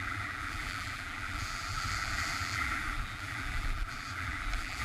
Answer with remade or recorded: remade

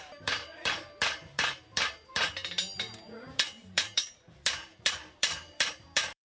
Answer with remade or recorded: remade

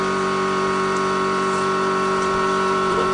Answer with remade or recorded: remade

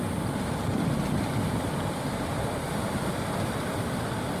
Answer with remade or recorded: remade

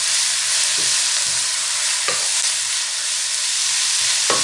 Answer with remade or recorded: recorded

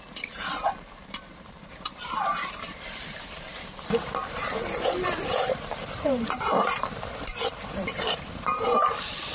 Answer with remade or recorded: remade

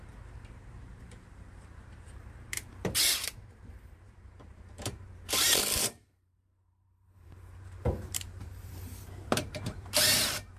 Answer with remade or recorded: remade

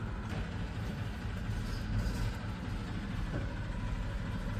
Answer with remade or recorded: recorded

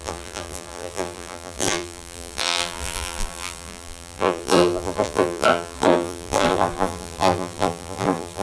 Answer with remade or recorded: remade